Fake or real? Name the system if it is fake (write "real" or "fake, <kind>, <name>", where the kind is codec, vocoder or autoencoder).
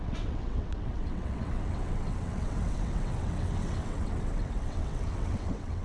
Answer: fake, vocoder, WaveNeXt